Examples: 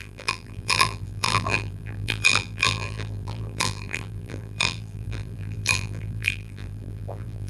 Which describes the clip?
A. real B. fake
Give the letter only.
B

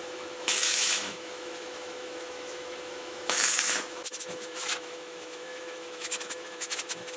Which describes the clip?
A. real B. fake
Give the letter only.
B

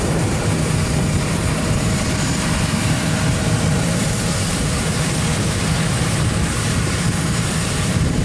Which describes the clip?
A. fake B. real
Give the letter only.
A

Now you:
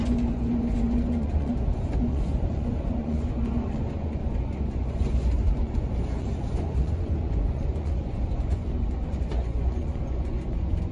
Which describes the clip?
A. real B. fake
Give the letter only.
B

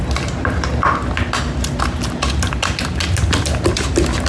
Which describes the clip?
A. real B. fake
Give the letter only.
A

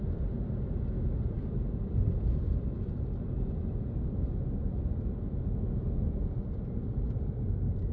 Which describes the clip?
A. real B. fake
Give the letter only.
A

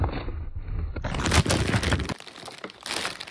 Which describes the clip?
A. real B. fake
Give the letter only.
A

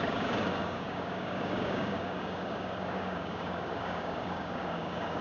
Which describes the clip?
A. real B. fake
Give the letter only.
B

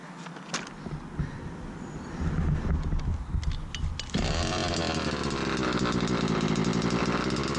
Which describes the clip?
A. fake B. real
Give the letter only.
B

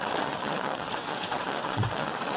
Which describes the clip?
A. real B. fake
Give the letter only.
B